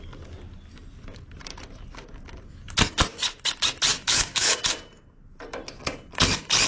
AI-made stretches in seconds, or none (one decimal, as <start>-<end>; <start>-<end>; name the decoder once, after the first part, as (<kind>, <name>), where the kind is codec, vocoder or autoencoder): 3.9-4.6 (autoencoder, DAC-VAE)